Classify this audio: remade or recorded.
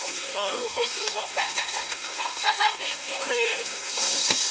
remade